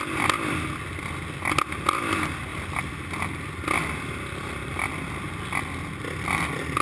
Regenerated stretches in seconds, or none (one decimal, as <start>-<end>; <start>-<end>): none